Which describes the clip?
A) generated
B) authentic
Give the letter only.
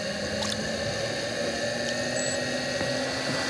B